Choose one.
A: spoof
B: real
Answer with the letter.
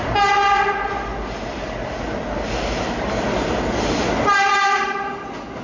B